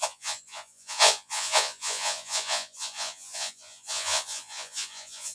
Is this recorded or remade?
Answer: remade